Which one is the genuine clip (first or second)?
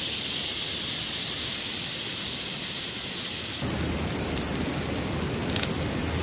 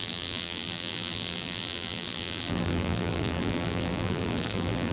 first